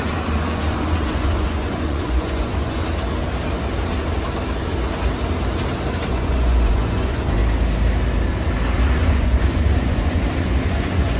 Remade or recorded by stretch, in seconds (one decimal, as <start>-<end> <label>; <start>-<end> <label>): 0.0-2.8 remade; 2.8-6.1 recorded; 6.1-7.4 remade; 7.4-9.1 recorded; 9.1-11.2 remade